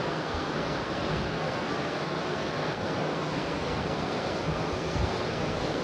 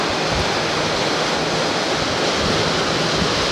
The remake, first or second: first